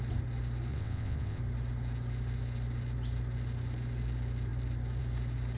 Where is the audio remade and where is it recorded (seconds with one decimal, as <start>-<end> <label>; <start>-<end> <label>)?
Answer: 0.0-0.7 recorded; 0.7-1.4 remade; 1.4-5.6 recorded